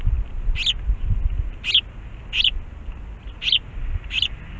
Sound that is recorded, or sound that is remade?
recorded